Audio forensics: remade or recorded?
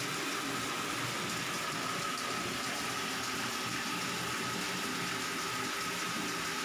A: remade